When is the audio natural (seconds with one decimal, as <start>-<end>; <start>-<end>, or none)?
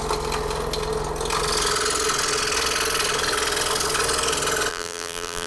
0.0-4.7